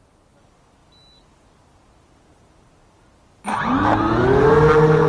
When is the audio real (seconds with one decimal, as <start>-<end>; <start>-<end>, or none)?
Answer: 0.0-5.1